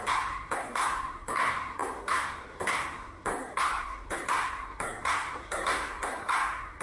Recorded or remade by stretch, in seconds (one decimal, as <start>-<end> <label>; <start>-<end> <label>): 0.0-6.8 remade